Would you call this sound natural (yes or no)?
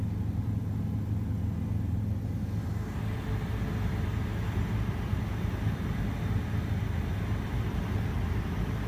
yes